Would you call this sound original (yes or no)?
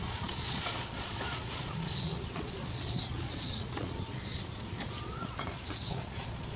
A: no